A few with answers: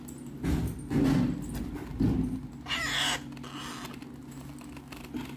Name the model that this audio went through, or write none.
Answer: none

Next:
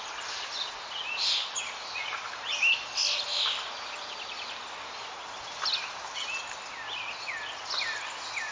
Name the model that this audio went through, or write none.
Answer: none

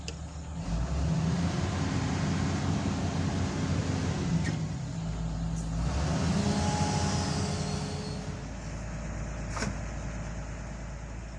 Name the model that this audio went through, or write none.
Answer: none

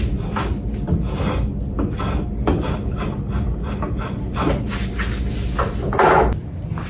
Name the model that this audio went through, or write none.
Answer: none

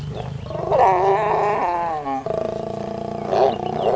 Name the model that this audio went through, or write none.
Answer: none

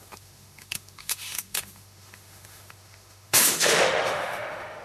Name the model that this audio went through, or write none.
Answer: autoencoder, DAC-VAE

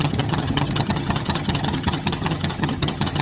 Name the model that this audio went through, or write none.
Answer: vocoder, HiFi-GAN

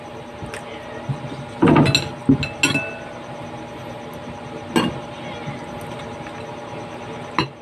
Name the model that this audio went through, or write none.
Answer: none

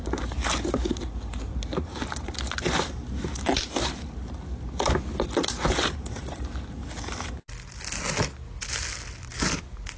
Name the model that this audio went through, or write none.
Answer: none